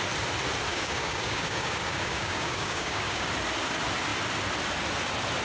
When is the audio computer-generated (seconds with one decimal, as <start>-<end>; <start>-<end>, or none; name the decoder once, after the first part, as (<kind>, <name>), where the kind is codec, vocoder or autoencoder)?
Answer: 0.7-3.3 (codec, DAC)